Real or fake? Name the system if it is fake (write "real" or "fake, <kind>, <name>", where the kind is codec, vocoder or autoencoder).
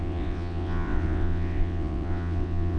fake, vocoder, WaveNeXt